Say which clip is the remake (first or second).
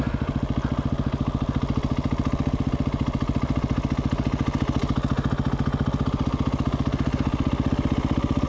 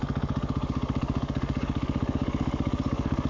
second